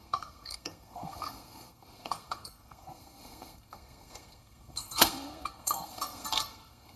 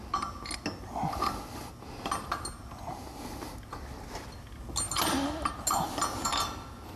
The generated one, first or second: first